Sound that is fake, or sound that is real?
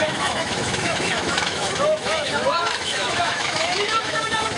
fake